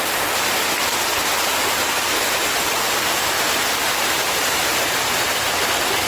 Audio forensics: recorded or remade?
recorded